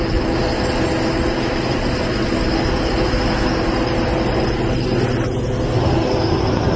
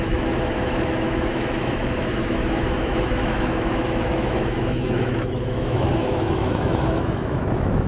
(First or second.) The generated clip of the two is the second